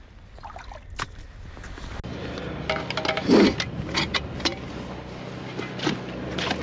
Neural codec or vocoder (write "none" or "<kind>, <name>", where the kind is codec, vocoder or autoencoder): none